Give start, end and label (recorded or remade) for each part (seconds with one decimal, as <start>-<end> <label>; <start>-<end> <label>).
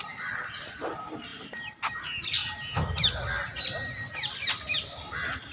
0.0-5.5 recorded